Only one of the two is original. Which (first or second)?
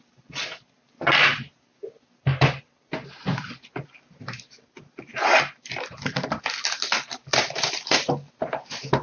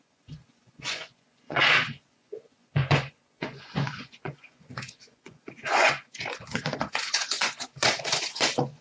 first